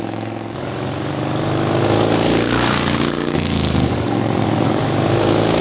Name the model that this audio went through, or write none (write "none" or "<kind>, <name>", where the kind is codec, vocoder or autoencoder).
codec, DAC